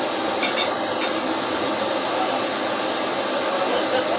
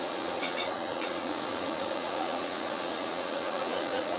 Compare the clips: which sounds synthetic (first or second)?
second